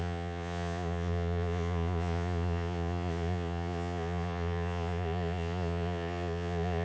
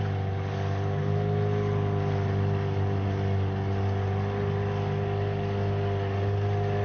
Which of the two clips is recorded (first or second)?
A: second